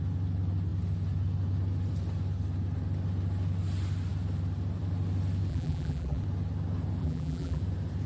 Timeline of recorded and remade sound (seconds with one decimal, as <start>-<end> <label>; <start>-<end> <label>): 0.0-5.5 recorded; 5.5-6.2 remade; 6.2-7.0 recorded; 7.0-7.6 remade; 7.6-8.1 recorded